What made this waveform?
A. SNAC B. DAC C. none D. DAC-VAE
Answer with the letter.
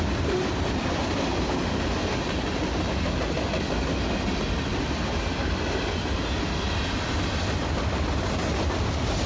C